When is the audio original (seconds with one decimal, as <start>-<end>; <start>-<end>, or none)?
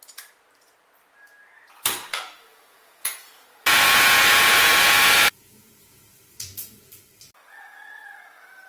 0.0-2.1; 6.9-8.7